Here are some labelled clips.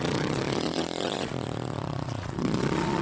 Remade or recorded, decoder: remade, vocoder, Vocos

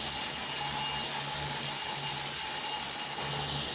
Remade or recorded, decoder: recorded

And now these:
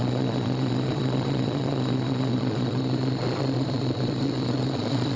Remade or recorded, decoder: remade, vocoder, Vocos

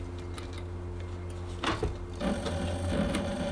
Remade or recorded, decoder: recorded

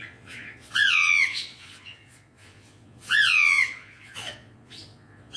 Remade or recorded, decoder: remade, vocoder, Vocos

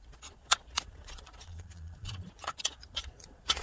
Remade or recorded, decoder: remade, vocoder, Vocos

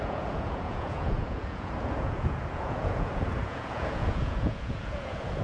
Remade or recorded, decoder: remade, vocoder, Vocos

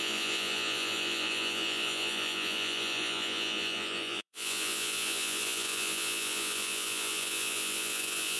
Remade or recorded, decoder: remade, vocoder, Vocos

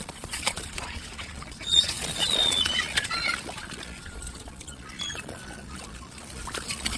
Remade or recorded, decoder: remade, vocoder, Vocos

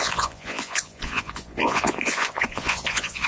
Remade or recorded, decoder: remade, vocoder, Vocos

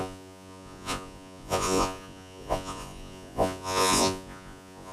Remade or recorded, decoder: remade, vocoder, Vocos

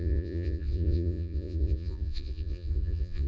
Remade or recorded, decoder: remade, vocoder, Vocos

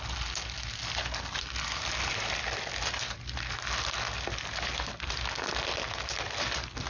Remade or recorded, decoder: recorded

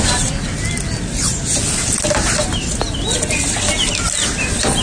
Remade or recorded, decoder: recorded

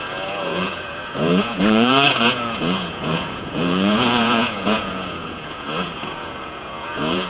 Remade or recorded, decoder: remade, vocoder, Vocos